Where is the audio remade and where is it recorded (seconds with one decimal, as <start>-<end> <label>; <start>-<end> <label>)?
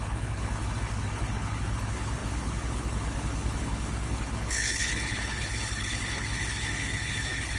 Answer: 0.0-7.6 remade